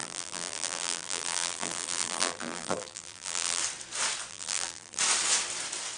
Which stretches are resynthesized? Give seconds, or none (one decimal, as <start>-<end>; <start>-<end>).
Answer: 0.0-3.6; 4.3-5.0